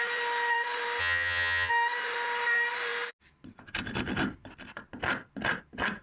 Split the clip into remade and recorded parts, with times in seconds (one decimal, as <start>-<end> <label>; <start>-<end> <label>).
0.0-1.0 recorded; 1.0-1.7 remade; 1.7-6.0 recorded